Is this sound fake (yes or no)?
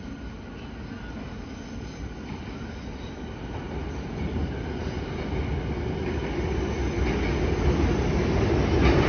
no